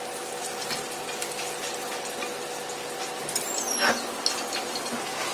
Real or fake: real